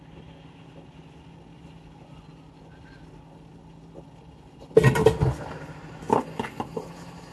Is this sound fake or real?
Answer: real